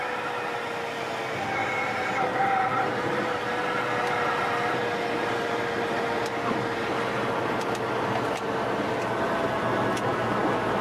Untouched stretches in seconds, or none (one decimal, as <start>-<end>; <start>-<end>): 0.0-10.8